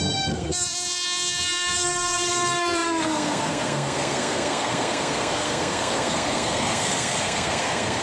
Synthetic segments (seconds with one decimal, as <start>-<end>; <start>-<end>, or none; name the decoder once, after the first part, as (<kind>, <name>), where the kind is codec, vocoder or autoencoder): 0.0-8.0 (codec, SNAC)